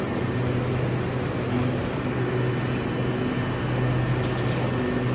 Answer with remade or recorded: recorded